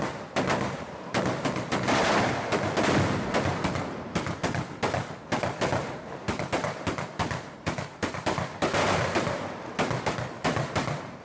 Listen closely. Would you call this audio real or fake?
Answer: real